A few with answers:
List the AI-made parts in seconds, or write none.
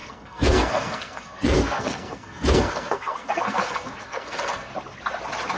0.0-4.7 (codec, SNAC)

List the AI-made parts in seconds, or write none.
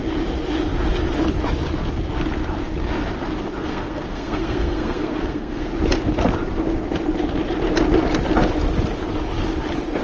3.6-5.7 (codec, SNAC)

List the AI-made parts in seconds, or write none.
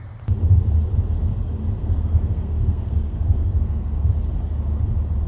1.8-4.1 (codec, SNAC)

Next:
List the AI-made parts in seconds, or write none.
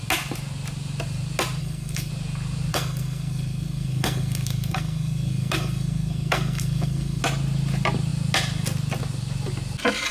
1.6-2.1 (codec, SNAC); 2.7-7.2